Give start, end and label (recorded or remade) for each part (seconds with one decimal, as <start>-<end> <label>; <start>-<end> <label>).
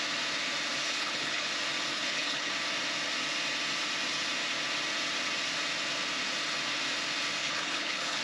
0.0-0.8 recorded; 0.8-1.5 remade; 1.5-1.9 recorded; 1.9-2.5 remade; 2.5-7.4 recorded; 7.4-8.2 remade